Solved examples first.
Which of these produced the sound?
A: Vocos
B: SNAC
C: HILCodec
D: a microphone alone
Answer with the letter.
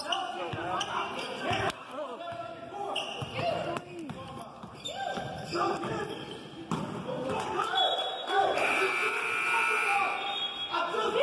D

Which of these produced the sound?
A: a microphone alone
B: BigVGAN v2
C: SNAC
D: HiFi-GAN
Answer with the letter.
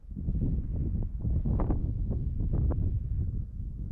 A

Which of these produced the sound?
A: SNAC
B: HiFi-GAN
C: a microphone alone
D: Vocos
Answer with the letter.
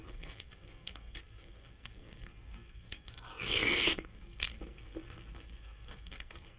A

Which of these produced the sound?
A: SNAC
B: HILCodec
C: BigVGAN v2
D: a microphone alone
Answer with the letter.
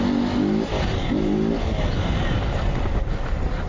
D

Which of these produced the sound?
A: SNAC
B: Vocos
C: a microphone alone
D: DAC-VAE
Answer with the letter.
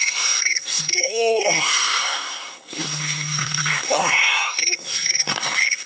A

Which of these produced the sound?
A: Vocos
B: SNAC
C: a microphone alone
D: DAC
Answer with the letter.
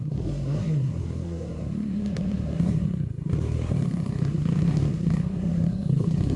B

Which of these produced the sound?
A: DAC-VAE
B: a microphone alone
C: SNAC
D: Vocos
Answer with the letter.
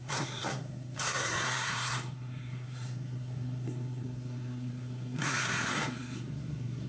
C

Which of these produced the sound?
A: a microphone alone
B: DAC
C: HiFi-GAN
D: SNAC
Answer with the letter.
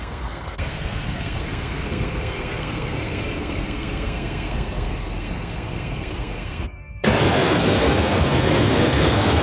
D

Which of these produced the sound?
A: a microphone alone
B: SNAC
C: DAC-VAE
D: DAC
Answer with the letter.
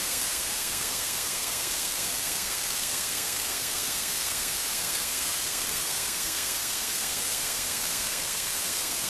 B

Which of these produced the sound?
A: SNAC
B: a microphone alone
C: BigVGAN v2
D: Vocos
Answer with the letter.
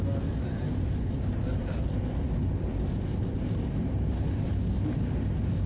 B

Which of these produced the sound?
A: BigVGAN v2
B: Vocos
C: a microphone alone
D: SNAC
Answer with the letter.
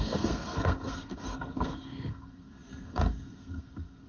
D